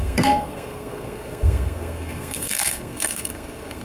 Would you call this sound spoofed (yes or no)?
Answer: yes